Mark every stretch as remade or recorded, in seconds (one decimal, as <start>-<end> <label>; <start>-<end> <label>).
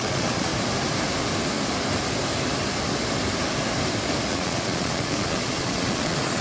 0.0-0.5 remade; 0.5-4.3 recorded; 4.3-6.4 remade